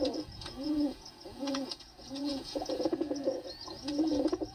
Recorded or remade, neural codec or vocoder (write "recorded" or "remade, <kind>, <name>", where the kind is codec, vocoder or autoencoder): remade, vocoder, Vocos